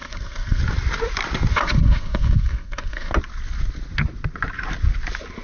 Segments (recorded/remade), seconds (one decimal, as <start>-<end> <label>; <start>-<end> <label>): 0.0-0.6 remade; 0.6-1.5 recorded; 1.5-3.1 remade; 3.1-5.4 recorded